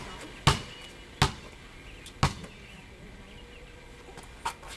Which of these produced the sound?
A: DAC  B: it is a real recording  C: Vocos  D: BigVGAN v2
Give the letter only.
B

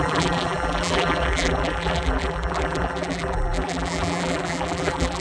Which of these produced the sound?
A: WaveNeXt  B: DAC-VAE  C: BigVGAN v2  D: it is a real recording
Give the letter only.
C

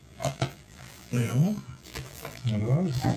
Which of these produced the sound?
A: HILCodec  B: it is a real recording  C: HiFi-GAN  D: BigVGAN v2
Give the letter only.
D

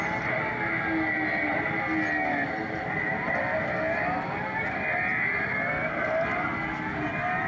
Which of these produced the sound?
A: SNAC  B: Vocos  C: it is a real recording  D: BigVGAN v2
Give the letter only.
C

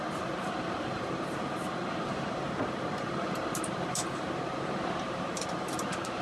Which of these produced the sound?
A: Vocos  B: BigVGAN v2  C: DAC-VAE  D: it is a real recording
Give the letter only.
B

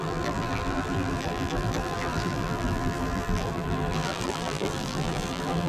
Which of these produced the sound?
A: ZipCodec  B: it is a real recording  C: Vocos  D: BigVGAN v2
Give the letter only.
D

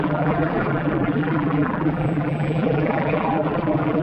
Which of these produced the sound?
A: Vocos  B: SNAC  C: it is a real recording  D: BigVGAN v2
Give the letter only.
D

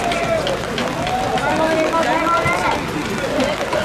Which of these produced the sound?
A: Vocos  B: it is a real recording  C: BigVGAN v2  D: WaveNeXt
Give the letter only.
B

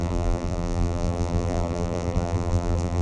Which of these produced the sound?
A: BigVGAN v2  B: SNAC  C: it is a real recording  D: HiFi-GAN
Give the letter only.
A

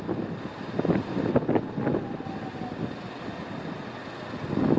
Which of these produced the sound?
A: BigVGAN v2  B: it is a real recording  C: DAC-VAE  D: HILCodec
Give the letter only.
B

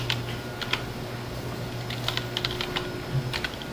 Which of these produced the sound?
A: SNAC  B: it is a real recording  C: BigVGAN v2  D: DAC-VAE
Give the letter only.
B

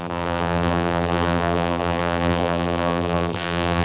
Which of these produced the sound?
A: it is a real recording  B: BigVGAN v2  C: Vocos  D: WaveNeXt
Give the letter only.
B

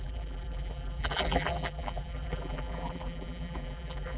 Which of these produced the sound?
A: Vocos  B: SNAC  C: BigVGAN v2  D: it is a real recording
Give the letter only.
C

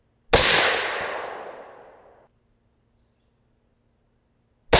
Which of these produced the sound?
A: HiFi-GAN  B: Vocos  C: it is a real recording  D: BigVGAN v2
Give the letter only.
C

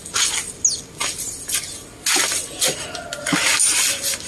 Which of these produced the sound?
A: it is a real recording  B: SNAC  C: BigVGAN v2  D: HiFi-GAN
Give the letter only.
A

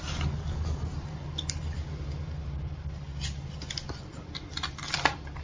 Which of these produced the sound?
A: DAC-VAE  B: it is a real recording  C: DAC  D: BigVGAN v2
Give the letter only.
B